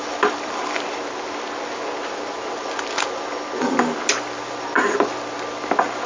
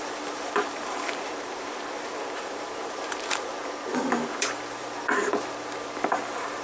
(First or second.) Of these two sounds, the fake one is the second